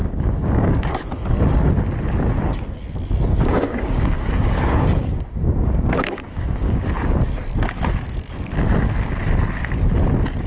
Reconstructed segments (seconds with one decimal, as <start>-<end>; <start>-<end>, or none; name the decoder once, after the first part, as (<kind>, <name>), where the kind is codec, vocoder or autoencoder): 0.0-1.3 (codec, DAC); 3.3-6.8